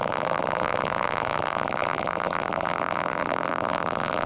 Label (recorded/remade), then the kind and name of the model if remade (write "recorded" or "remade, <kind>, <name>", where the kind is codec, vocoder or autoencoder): remade, vocoder, BigVGAN v2